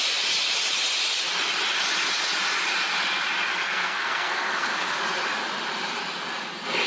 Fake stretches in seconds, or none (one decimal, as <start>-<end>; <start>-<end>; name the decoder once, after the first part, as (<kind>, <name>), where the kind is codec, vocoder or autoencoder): 3.5-5.0 (codec, SNAC)